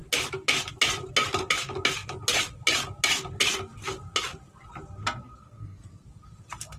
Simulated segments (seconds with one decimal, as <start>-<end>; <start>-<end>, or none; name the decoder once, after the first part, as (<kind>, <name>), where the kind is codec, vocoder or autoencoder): 5.4-5.9 (codec, SNAC)